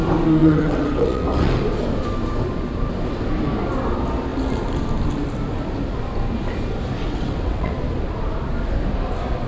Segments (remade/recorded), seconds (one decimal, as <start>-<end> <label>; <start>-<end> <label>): 0.0-0.4 recorded; 0.4-1.6 remade; 1.6-7.0 recorded; 7.0-7.7 remade; 7.7-9.5 recorded

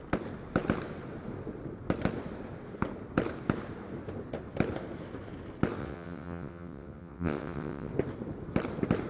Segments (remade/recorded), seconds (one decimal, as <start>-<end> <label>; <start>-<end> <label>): 0.0-5.8 recorded; 5.8-7.9 remade; 7.9-9.1 recorded

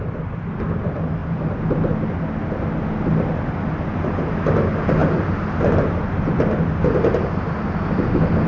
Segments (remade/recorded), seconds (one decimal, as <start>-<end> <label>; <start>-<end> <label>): 0.0-8.5 recorded